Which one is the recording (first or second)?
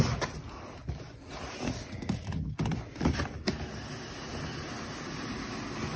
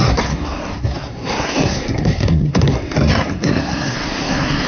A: first